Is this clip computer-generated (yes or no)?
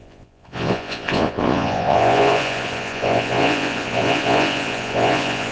yes